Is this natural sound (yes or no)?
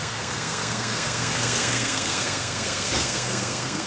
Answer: no